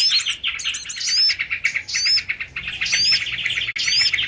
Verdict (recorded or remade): recorded